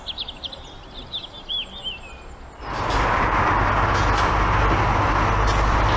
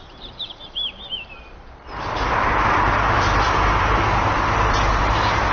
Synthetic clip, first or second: second